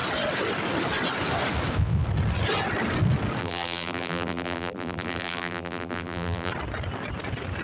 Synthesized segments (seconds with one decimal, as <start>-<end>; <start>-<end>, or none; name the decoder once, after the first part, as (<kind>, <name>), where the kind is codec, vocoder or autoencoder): 3.4-6.5 (vocoder, BigVGAN v2)